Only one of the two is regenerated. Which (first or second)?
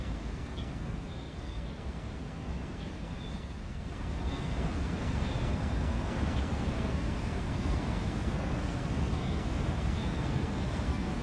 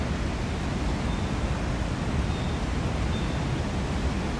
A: first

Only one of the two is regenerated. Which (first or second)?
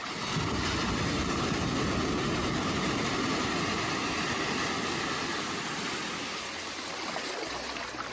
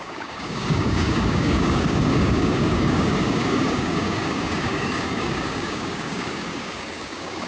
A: second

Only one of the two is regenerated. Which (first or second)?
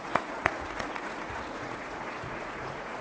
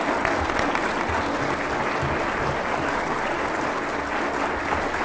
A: first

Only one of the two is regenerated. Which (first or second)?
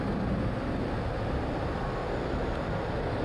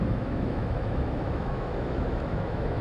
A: second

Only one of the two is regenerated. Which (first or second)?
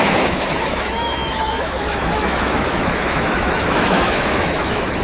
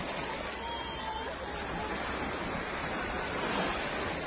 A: first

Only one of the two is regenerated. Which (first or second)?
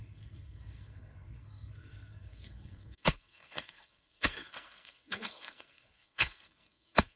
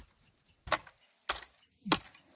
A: first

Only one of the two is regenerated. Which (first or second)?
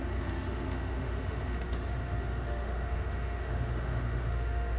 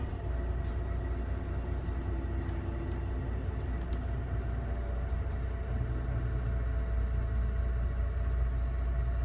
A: first